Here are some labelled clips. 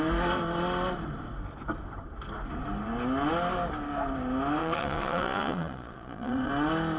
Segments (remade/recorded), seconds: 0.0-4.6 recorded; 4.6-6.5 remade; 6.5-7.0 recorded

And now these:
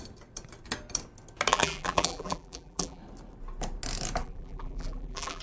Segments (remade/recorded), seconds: 0.0-1.5 recorded; 1.5-3.0 remade; 3.0-4.2 recorded; 4.2-5.4 remade

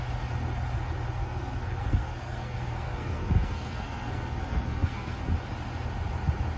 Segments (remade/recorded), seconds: 0.0-1.2 recorded; 1.2-5.2 remade; 5.2-6.6 recorded

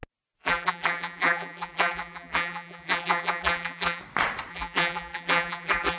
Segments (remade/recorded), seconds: 0.0-0.4 recorded; 0.4-4.0 remade; 4.0-4.5 recorded; 4.5-6.0 remade

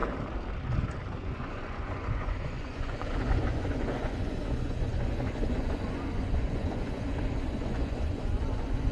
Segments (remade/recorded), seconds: 0.0-1.2 recorded; 1.2-8.9 remade

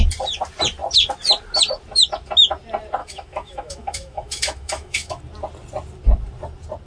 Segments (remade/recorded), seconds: 0.0-3.0 recorded; 3.0-5.2 remade; 5.2-6.9 recorded

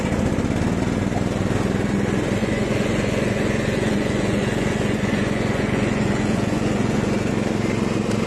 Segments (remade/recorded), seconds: 0.0-2.4 recorded; 2.4-7.3 remade; 7.3-8.3 recorded